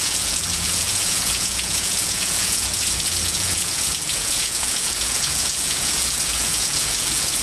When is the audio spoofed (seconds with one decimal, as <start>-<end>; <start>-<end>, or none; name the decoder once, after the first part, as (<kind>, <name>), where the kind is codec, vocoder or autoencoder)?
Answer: 0.0-7.4 (vocoder, Vocos)